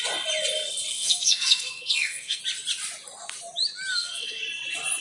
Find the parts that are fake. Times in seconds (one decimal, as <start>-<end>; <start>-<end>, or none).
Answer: 0.9-2.4; 3.9-4.4